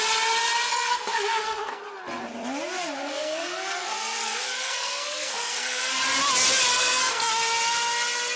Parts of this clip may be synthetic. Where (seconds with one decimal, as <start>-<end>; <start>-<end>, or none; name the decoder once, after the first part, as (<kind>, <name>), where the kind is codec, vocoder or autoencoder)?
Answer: 0.7-1.8 (codec, SNAC); 3.0-5.9; 6.7-7.3

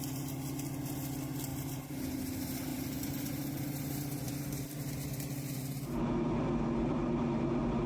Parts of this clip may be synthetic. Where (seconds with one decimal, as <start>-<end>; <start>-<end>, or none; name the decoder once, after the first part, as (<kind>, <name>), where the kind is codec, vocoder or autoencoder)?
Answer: 2.7-3.8 (vocoder, BigVGAN v2); 4.2-4.8

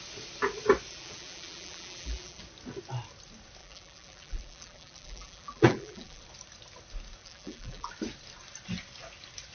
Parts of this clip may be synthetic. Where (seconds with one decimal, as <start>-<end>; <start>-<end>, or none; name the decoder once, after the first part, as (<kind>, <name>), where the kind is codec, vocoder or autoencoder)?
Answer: 0.9-2.4 (vocoder, BigVGAN v2); 3.6-6.2; 7.2-7.9

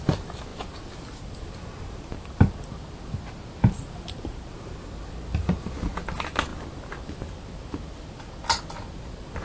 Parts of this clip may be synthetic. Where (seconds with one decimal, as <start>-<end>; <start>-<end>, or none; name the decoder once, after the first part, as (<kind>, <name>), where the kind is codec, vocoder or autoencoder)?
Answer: none

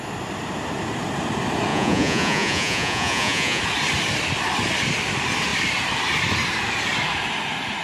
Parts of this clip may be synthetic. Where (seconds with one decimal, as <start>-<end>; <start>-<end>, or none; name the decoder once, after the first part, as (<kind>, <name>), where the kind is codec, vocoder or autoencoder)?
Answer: 1.7-3.6 (vocoder, Vocos)